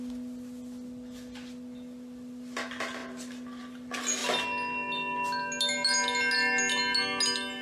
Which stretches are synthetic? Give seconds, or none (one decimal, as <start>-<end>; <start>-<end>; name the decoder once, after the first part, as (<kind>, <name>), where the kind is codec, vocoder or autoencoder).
none